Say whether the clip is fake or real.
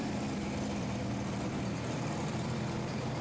fake